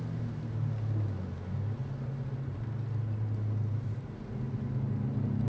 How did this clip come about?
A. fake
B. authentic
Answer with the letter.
B